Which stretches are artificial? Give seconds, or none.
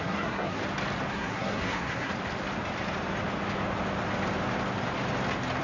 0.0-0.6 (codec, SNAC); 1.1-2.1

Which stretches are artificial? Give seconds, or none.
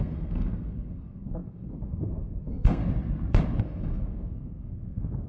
0.0-2.8 (codec, SNAC); 3.6-5.3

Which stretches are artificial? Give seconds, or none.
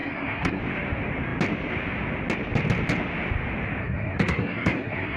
0.0-0.6 (codec, SNAC); 3.8-5.2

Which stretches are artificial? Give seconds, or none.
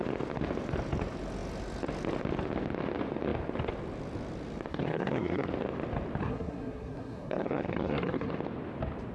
4.7-5.5 (codec, SNAC); 6.2-8.3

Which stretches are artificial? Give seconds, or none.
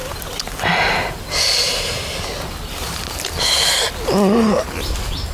none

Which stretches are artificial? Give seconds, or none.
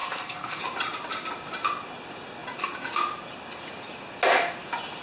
0.0-0.6 (codec, SNAC)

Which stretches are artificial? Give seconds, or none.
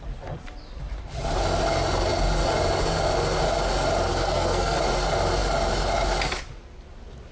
4.1-4.8 (codec, SNAC)